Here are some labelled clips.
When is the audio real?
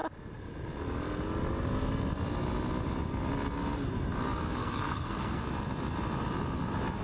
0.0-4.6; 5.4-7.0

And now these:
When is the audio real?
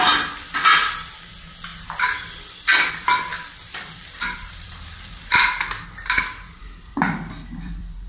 0.0-1.7; 2.9-3.3; 5.5-6.6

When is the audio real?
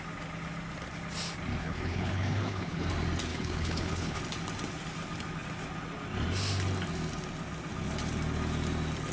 0.0-1.6; 2.9-3.3; 4.2-9.1